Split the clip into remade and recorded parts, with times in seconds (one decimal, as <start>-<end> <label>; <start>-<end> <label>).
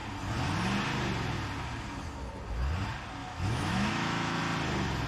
0.0-3.2 recorded; 3.2-4.4 remade; 4.4-5.1 recorded